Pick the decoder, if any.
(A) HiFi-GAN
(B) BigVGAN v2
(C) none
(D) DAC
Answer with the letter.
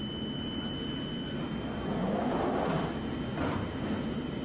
C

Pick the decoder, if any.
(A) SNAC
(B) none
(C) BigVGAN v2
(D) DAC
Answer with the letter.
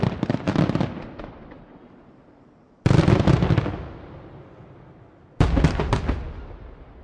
B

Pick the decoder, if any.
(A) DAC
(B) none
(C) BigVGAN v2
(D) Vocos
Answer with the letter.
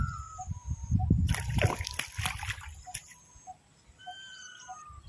C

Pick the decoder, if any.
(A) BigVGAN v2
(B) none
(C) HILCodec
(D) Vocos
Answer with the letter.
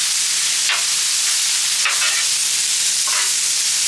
B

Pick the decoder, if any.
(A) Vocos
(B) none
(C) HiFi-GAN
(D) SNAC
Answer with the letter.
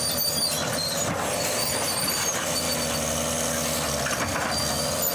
B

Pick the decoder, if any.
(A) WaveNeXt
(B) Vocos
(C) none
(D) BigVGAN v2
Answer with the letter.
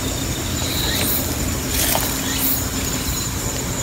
C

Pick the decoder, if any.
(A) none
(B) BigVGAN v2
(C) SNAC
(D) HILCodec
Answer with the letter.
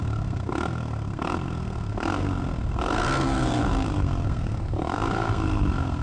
C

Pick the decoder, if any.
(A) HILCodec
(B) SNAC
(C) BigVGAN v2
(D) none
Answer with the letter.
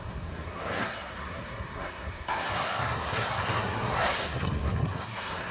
B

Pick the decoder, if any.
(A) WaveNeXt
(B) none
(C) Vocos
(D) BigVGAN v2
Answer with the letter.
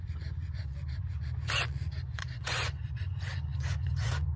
C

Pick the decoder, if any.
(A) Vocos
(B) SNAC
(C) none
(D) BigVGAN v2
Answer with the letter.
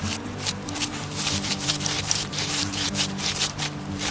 D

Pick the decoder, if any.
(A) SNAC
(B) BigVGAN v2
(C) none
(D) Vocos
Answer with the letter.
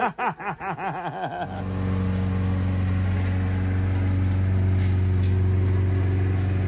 C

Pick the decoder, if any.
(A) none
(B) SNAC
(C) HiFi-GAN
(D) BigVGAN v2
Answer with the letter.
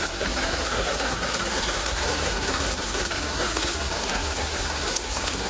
B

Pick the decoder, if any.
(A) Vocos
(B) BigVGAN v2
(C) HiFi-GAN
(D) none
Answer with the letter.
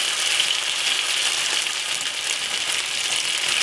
D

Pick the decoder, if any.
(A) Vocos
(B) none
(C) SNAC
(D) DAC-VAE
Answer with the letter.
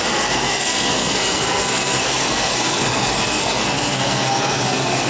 C